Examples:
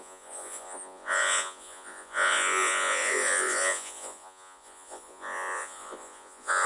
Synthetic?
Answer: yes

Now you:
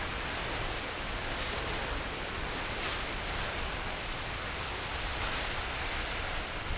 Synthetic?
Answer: no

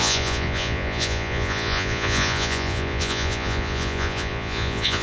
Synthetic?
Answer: yes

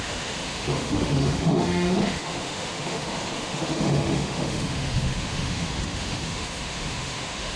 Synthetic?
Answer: yes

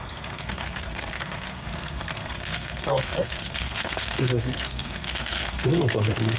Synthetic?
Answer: yes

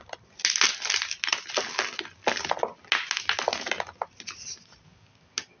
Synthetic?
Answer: no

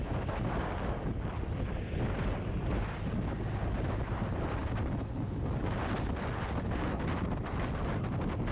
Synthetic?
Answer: no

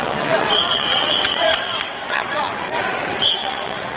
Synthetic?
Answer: yes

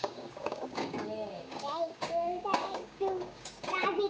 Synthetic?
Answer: yes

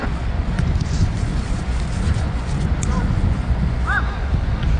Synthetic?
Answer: yes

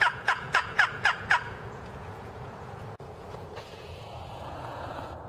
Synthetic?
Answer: yes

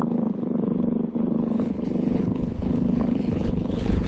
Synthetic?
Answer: yes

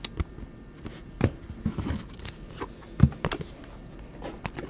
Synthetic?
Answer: no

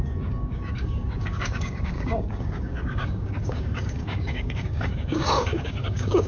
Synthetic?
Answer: yes